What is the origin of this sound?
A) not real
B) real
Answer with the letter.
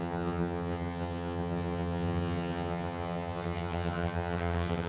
A